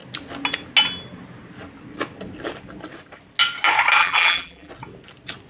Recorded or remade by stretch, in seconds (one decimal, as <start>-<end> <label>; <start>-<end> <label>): 0.0-4.0 recorded; 4.0-4.7 remade; 4.7-5.5 recorded